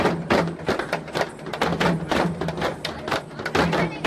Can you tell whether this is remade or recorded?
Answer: recorded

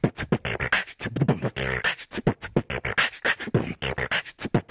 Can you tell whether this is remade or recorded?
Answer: recorded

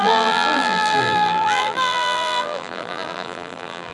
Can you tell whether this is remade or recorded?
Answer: remade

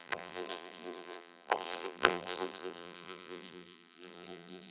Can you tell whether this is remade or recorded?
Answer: remade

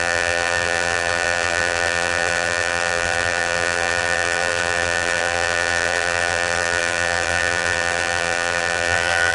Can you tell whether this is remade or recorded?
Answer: remade